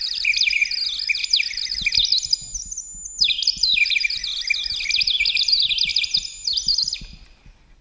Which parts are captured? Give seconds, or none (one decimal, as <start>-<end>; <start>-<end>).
0.6-3.6; 4.2-4.9; 5.9-7.0